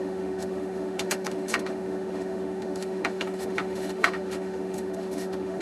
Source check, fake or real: fake